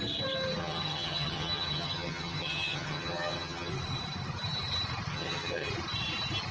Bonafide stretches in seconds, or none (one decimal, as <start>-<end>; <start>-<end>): 0.0-0.6; 3.7-5.1; 5.7-6.5